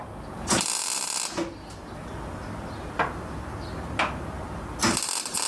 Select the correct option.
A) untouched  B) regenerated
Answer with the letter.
A